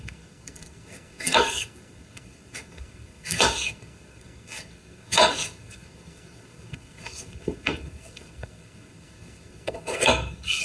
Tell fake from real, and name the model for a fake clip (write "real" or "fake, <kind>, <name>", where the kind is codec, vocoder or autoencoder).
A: fake, codec, SNAC